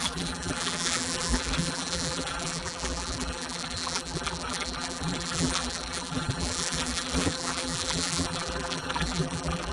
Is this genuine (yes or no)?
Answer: no